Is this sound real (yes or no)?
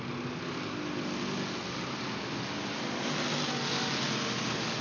yes